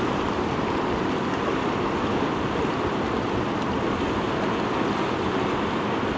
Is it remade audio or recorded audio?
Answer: recorded